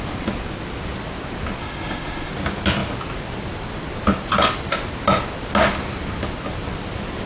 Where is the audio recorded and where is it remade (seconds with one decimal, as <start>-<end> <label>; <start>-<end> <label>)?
0.0-1.6 recorded; 1.6-2.3 remade; 2.3-7.3 recorded